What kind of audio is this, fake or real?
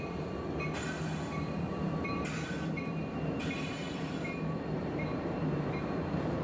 fake